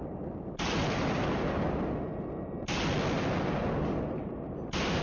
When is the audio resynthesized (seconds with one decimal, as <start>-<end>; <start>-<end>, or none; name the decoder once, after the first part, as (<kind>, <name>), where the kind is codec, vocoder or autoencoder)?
none